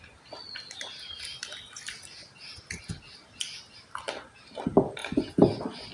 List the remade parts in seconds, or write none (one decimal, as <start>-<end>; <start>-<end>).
none